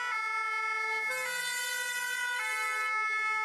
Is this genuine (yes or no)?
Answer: yes